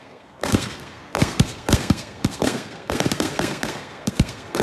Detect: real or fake fake